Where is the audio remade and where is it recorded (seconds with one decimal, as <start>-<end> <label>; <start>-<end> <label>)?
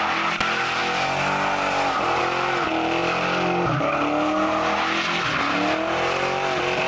0.0-6.9 recorded